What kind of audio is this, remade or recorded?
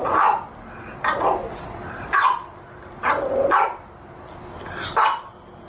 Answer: recorded